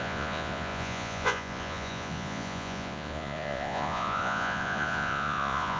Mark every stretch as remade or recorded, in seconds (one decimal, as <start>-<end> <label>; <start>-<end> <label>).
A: 0.0-5.8 remade

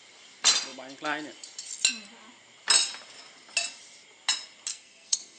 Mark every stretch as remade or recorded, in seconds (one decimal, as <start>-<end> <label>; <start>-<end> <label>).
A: 0.0-4.7 recorded; 4.7-5.4 remade

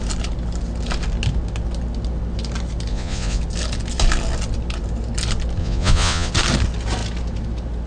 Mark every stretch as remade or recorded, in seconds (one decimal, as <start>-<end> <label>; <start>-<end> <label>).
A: 0.0-2.9 recorded; 2.9-3.4 remade; 3.4-5.6 recorded; 5.6-6.3 remade; 6.3-7.9 recorded

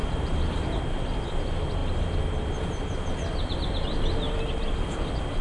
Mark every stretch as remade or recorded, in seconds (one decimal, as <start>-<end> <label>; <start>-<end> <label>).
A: 0.0-0.8 remade; 0.8-5.4 recorded

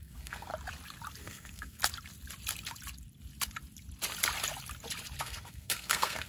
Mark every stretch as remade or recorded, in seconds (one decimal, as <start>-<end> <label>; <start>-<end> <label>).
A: 0.0-0.5 remade; 0.5-1.2 recorded; 1.2-1.8 remade; 1.8-5.2 recorded; 5.2-6.3 remade